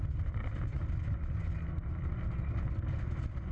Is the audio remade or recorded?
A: recorded